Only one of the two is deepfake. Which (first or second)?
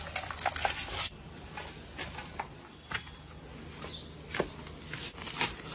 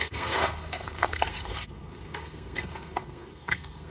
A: second